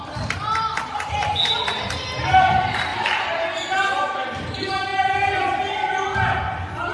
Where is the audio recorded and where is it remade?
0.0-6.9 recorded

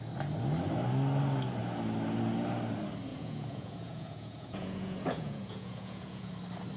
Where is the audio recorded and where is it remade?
0.0-3.1 recorded; 3.1-6.3 remade; 6.3-6.8 recorded

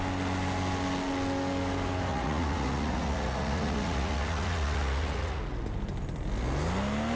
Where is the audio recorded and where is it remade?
0.0-2.1 recorded; 2.1-5.4 remade; 5.4-7.2 recorded

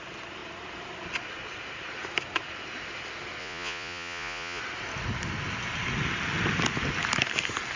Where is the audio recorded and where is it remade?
0.0-3.4 recorded; 3.4-4.6 remade; 4.6-7.8 recorded

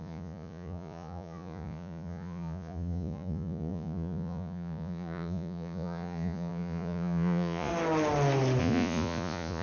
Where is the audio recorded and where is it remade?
0.0-7.7 remade; 7.7-8.6 recorded; 8.6-9.6 remade

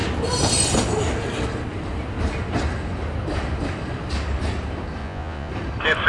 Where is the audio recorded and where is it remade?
0.0-5.0 recorded; 5.0-5.5 remade; 5.5-6.1 recorded

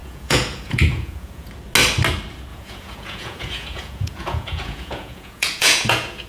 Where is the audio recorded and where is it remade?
0.0-1.5 remade; 1.5-2.5 recorded; 2.5-6.3 remade